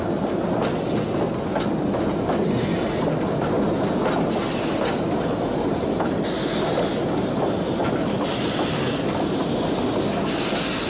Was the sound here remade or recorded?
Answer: recorded